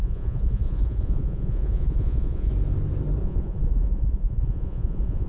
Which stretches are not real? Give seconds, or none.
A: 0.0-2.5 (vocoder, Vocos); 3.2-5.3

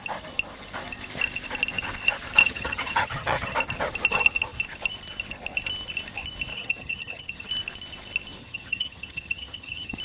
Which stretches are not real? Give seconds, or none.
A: 2.4-3.5 (vocoder, HiFi-GAN); 6.5-7.5; 8.4-10.0

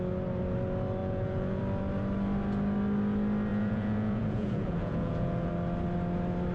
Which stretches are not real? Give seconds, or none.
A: 1.0-1.6 (vocoder, Vocos); 3.5-5.5

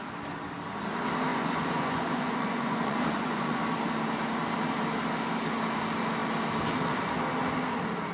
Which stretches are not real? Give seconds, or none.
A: 1.3-3.6 (vocoder, Vocos)

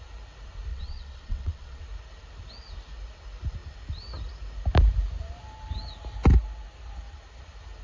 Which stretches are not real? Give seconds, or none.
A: 0.7-1.8 (vocoder, WaveNeXt)

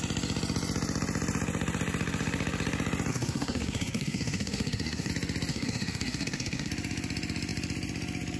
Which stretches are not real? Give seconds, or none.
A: 3.1-5.1 (codec, SNAC); 5.5-6.7